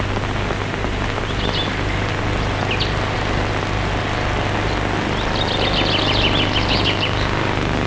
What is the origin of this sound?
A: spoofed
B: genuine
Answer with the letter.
B